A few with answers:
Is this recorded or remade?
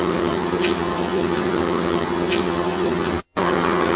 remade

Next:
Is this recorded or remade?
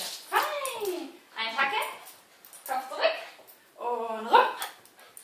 recorded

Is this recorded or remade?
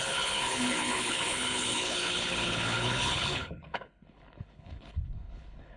remade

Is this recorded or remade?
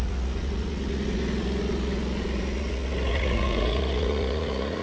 remade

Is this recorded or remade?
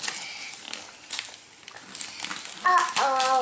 recorded